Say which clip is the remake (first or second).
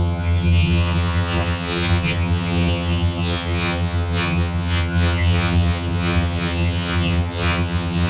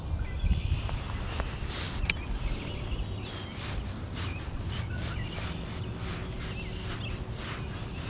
first